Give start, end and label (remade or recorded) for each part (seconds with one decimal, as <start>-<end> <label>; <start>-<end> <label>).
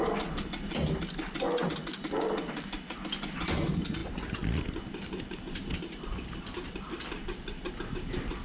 0.0-8.4 recorded